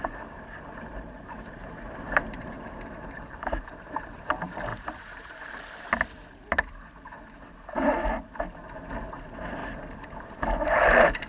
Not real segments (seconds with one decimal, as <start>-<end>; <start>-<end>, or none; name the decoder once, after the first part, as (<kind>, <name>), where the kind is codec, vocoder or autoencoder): 0.0-4.3 (vocoder, BigVGAN v2); 4.7-5.5; 9.6-10.4